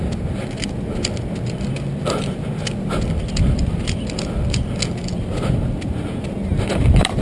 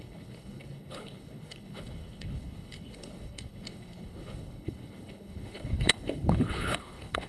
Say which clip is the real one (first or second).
first